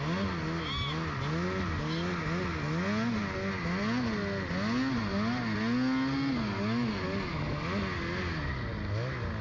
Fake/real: real